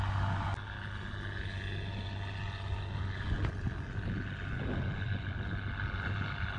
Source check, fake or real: real